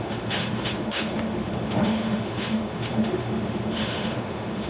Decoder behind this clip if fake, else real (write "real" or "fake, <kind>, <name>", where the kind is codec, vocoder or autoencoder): fake, autoencoder, DAC-VAE